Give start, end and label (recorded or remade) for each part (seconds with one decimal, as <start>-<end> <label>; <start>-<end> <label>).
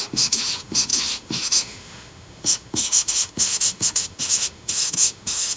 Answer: 0.0-5.6 remade